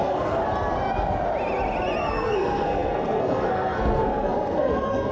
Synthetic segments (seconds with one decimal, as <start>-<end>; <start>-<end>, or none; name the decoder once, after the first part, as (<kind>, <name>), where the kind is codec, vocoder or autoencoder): 0.0-0.4 (codec, SNAC); 2.0-5.1